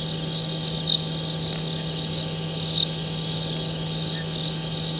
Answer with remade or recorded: recorded